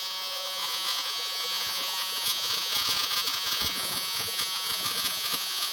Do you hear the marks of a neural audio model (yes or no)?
yes